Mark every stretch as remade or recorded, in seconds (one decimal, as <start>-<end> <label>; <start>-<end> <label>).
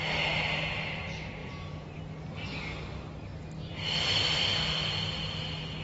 0.0-1.4 recorded; 1.4-2.0 remade; 2.0-5.8 recorded